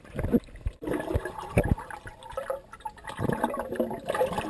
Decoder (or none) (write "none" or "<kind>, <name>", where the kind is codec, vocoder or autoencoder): vocoder, BigVGAN v2